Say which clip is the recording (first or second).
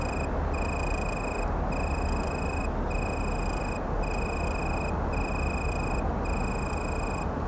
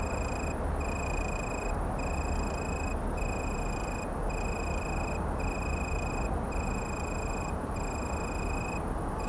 first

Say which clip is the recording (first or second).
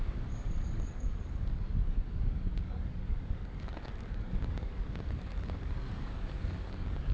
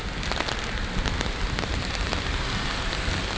second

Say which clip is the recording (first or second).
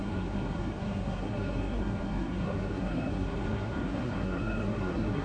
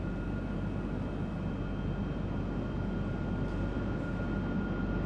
second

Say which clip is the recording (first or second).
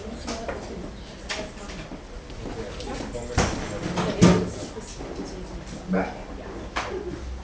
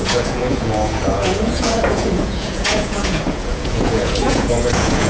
first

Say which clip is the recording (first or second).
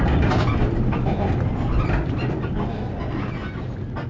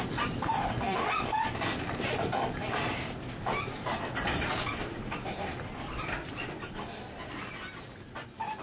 first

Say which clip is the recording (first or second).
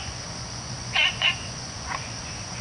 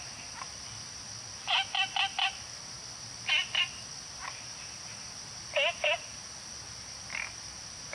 second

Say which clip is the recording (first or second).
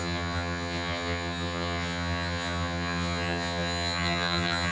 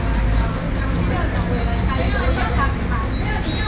second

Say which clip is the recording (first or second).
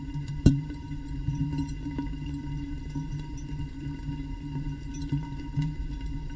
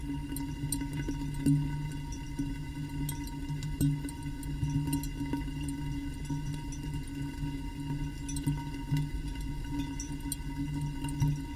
second